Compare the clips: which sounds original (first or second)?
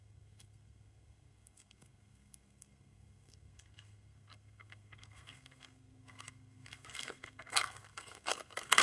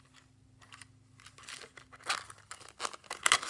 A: second